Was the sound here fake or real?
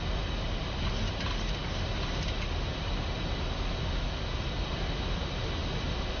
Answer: real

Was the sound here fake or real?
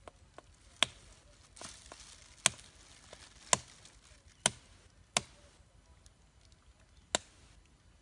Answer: real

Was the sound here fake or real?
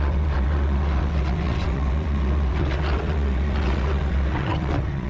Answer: fake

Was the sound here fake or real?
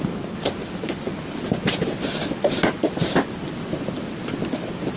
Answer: real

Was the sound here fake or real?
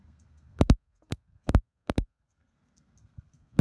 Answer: fake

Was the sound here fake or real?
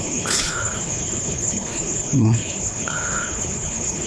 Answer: fake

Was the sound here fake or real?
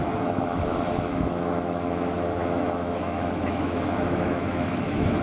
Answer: fake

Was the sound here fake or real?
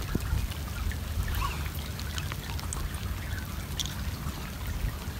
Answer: real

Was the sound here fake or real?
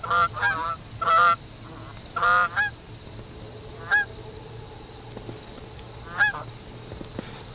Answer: real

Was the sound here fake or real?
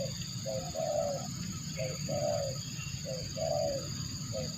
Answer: real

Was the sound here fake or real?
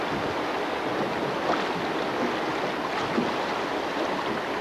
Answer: real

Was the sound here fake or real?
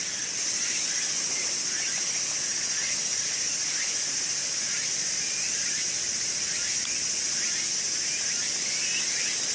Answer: real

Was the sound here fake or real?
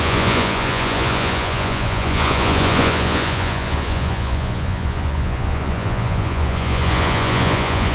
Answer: fake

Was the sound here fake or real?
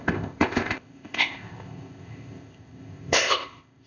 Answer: fake